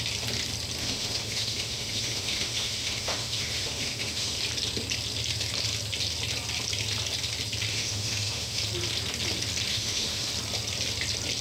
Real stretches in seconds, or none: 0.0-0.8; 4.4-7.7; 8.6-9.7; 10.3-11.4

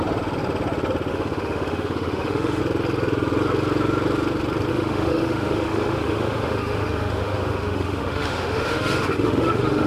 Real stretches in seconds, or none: 0.0-1.1; 2.6-4.7

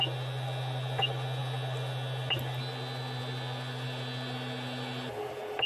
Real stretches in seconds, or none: 0.0-5.7

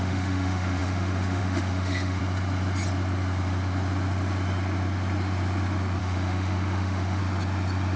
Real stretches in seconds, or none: 2.2-6.0; 7.2-8.0

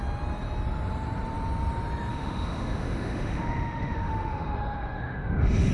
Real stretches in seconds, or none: 0.0-2.1

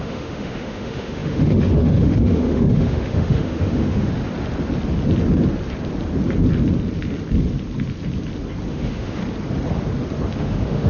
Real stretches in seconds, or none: 4.1-8.7; 9.2-10.4

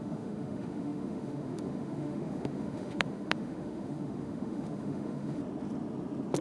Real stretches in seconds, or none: 5.4-6.4